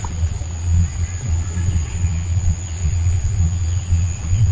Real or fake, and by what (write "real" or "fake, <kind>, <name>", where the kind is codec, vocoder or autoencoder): fake, vocoder, Vocos